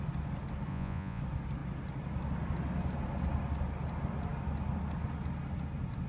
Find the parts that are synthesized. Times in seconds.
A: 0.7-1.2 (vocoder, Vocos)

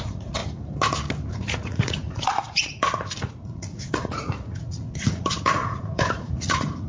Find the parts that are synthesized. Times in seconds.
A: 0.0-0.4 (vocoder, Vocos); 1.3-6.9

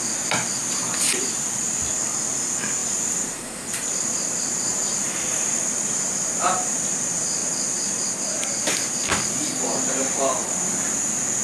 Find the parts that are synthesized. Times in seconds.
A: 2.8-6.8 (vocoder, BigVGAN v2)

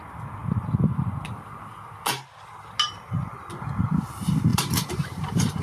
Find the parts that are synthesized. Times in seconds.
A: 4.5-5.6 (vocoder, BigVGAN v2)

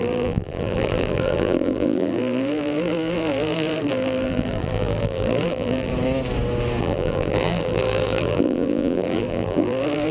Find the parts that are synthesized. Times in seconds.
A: 0.0-5.9 (vocoder, BigVGAN v2); 6.8-10.1